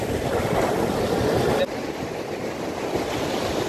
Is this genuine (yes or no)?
yes